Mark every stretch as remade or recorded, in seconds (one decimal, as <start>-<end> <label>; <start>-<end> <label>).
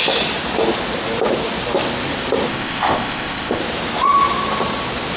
0.0-2.5 recorded; 2.5-3.6 remade; 3.6-5.2 recorded